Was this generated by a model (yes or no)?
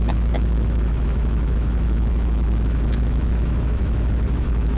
yes